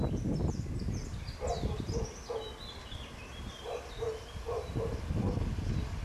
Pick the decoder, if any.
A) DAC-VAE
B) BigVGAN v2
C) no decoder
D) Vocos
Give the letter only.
C